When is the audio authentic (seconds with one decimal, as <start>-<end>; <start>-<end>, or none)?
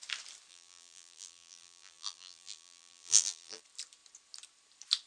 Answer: 0.0-0.5; 3.6-5.1